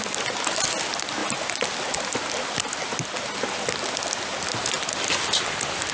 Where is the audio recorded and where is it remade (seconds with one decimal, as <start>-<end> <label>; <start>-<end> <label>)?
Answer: 0.0-5.9 recorded